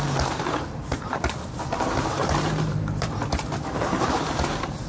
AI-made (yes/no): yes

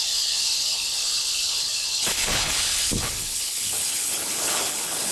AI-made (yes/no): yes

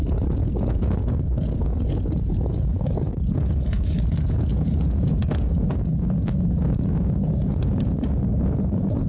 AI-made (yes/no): yes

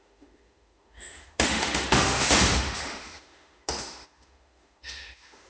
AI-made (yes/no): yes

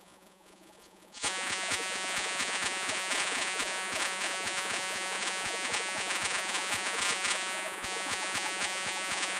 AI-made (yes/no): yes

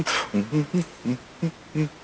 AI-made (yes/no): no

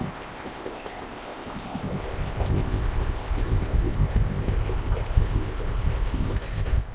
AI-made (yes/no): yes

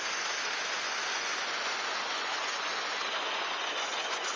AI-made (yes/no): yes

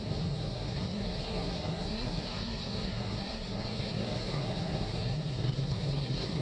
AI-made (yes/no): yes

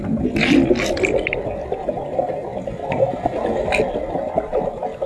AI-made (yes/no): no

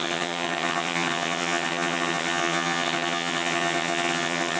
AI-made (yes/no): yes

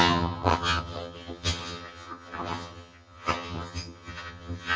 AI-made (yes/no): yes